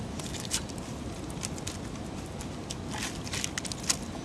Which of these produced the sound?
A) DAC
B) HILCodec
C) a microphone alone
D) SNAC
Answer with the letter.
C